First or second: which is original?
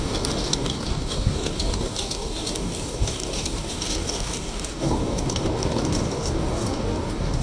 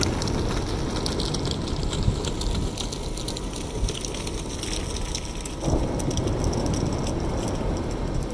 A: second